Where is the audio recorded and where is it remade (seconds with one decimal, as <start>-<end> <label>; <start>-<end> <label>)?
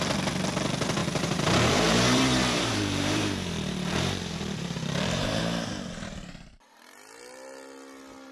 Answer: 0.0-1.0 recorded; 1.0-5.4 remade; 5.4-8.3 recorded